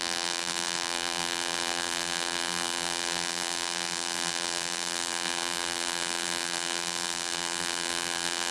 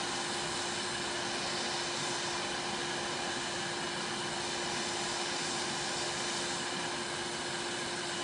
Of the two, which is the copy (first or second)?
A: first